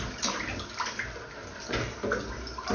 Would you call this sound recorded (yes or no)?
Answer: yes